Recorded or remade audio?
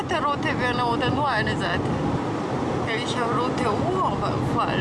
recorded